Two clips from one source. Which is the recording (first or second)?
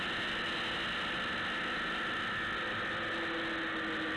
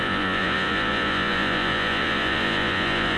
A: first